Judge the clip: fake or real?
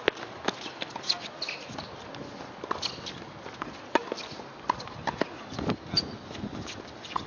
real